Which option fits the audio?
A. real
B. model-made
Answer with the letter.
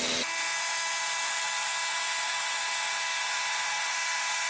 A